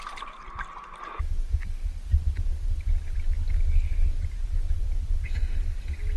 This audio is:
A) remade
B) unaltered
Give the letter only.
B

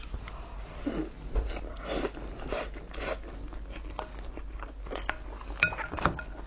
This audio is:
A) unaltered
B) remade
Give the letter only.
A